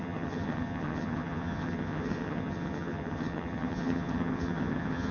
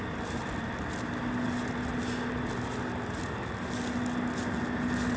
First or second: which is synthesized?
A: first